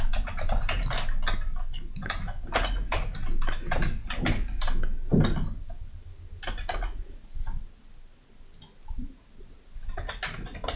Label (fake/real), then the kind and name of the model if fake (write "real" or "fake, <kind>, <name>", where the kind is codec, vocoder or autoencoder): real